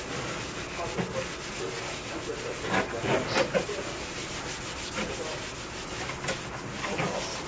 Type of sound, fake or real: real